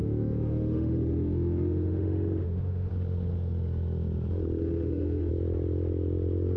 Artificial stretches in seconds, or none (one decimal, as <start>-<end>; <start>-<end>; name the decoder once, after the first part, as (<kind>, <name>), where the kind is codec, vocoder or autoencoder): 0.0-2.9 (autoencoder, DAC-VAE); 4.6-5.3